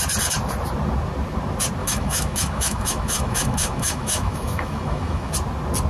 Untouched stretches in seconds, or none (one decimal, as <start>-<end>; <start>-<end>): 0.0-1.8; 5.3-5.9